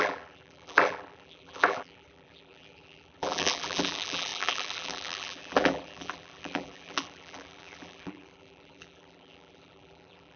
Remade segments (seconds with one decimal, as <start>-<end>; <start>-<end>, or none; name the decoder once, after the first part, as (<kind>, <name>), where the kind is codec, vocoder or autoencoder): 0.0-10.4 (vocoder, BigVGAN v2)

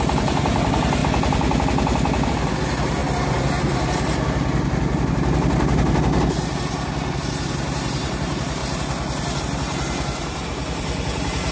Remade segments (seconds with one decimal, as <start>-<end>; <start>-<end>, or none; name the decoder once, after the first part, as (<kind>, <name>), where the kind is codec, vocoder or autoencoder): 0.0-1.0 (vocoder, BigVGAN v2); 2.3-3.0; 7.3-8.6; 9.4-11.5

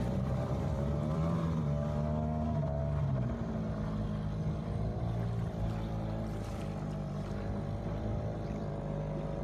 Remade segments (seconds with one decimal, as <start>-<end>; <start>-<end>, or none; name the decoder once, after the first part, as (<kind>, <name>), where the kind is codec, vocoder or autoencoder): 0.0-2.8 (vocoder, BigVGAN v2); 4.6-9.4